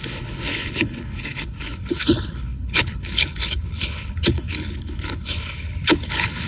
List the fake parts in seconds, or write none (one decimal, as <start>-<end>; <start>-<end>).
0.0-6.5